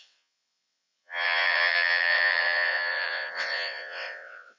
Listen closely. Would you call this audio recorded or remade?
remade